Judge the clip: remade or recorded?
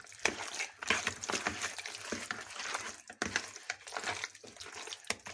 recorded